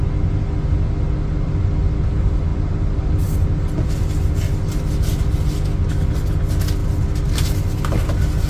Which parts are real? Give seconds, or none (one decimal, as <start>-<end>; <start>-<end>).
0.0-2.5; 3.1-8.5